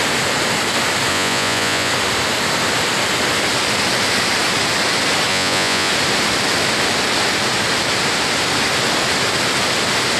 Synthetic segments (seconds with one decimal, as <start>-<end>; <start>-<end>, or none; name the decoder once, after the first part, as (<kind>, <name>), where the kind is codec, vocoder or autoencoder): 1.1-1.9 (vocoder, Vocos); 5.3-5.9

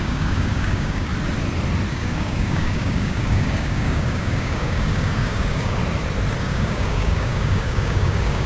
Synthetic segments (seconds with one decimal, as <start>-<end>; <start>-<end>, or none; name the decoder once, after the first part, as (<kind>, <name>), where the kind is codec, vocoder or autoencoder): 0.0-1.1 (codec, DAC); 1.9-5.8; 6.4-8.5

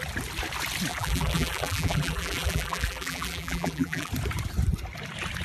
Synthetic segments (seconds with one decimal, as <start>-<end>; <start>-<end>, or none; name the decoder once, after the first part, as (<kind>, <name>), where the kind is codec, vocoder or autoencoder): 0.9-4.1 (vocoder, BigVGAN v2)

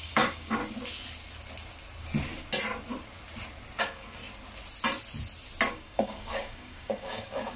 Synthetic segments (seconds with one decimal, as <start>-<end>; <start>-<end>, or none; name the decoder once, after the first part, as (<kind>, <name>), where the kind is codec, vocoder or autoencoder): 0.0-0.6 (codec, DAC); 3.8-4.2; 5.7-7.6